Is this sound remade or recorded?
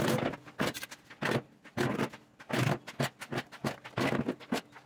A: recorded